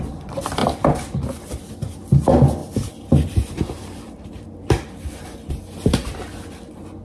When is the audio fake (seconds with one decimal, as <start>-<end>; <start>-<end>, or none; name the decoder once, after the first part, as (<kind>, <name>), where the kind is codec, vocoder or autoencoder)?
0.6-1.5 (vocoder, BigVGAN v2); 2.6-5.5